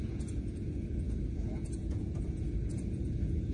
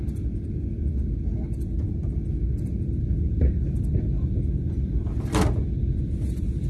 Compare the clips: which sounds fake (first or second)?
first